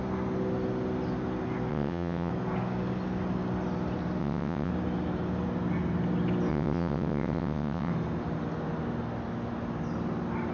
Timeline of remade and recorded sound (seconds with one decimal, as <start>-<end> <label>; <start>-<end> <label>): 0.0-1.7 recorded; 1.7-2.3 remade; 2.3-4.2 recorded; 4.2-4.7 remade; 4.7-6.5 recorded; 6.5-7.9 remade; 7.9-10.5 recorded